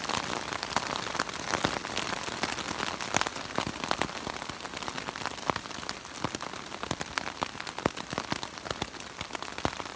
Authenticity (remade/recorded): recorded